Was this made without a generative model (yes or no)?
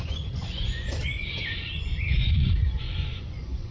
no